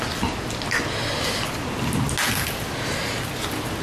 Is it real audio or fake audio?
real